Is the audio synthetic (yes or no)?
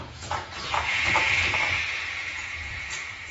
yes